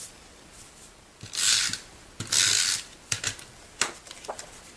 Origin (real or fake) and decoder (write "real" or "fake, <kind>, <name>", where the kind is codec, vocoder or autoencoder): real